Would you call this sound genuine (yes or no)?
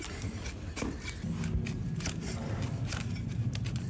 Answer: yes